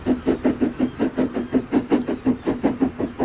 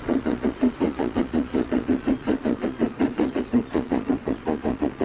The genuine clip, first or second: first